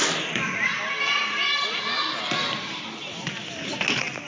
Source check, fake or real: real